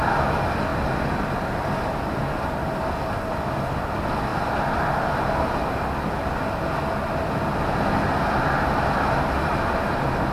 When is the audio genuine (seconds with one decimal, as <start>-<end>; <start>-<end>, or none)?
0.0-10.3